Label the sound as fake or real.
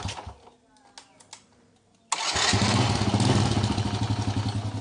real